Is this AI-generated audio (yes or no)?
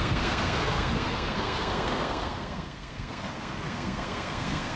yes